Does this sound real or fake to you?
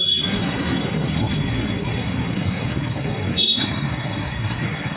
fake